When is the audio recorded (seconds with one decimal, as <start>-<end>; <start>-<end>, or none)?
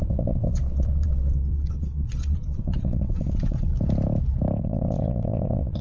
3.7-4.6